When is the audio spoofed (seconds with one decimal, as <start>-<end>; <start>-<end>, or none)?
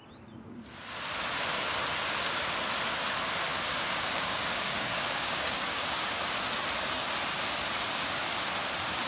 3.5-6.2